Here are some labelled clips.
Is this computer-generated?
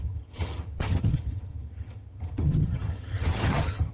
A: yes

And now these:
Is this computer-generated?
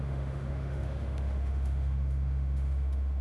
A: yes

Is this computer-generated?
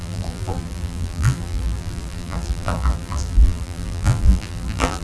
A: yes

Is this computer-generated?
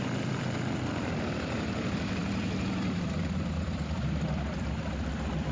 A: yes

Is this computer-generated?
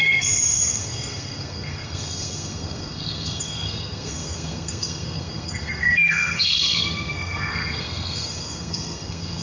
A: yes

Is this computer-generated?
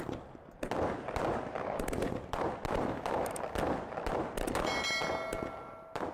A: no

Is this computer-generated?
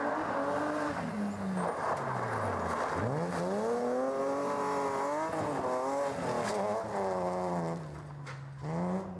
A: no